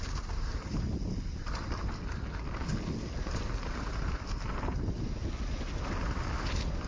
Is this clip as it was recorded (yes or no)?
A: yes